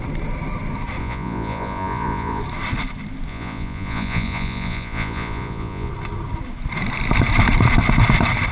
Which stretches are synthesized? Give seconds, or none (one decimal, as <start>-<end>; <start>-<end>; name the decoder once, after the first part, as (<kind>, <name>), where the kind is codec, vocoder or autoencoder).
1.0-2.4 (vocoder, Vocos); 3.3-5.9

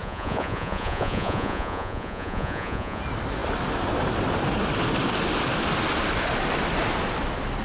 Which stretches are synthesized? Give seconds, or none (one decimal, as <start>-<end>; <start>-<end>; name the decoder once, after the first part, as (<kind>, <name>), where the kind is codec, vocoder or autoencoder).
0.0-3.0 (vocoder, Vocos)

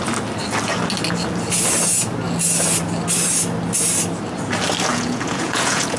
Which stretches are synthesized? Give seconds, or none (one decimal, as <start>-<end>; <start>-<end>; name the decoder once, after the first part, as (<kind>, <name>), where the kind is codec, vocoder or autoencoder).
4.9-6.0 (vocoder, Vocos)

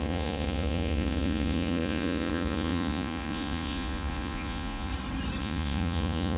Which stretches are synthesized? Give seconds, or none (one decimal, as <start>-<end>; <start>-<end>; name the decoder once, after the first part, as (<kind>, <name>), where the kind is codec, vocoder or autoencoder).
0.0-4.9 (vocoder, Vocos); 5.4-6.4

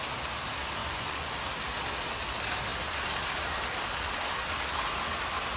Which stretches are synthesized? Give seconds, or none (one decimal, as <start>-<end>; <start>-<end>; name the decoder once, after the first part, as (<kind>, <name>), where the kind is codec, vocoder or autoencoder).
0.8-1.3 (vocoder, Vocos)

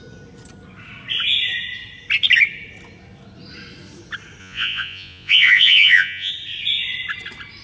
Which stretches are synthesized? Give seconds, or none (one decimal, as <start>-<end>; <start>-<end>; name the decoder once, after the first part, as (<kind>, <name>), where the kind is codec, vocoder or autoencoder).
4.4-6.3 (vocoder, Vocos)